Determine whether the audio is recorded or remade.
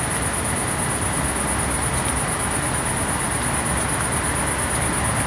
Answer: recorded